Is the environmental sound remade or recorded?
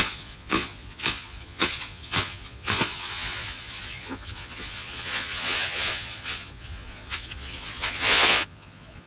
remade